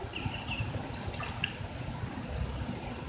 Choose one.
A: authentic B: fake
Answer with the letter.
A